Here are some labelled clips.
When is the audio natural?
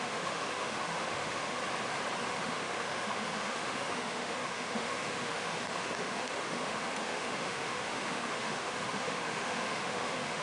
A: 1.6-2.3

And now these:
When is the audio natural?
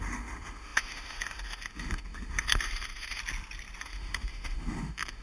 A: 3.2-3.8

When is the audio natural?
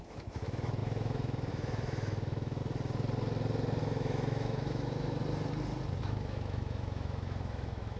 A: 2.6-3.8; 5.2-6.0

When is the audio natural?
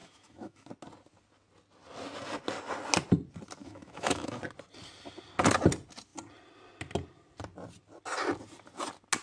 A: 0.7-3.6; 4.4-9.2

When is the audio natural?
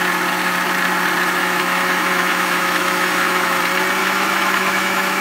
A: 0.0-1.4; 3.6-4.0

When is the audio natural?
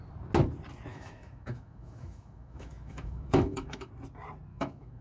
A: 0.0-0.9; 3.9-4.5